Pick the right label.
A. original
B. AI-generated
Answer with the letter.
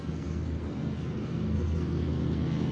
B